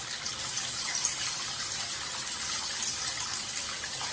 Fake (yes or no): yes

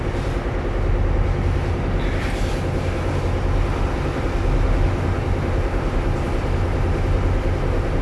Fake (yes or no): no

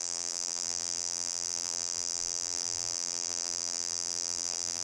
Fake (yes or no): yes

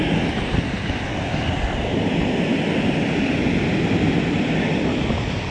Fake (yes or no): no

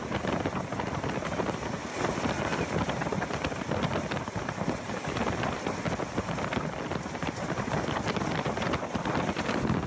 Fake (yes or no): no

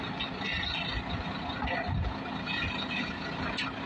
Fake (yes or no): no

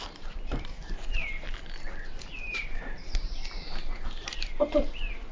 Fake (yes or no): yes